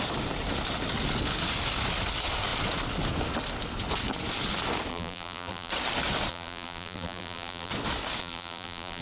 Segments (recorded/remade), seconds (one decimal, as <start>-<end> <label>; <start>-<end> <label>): 0.0-4.9 recorded; 4.9-5.7 remade; 5.7-6.3 recorded; 6.3-7.7 remade; 7.7-8.2 recorded; 8.2-9.0 remade